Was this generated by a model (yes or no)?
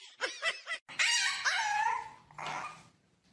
no